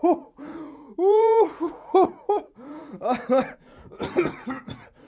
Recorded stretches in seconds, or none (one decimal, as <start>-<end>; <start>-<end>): none